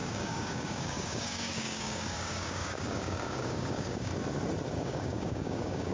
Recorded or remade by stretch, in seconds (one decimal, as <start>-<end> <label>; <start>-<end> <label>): 0.0-4.1 remade; 4.1-4.7 recorded; 4.7-5.9 remade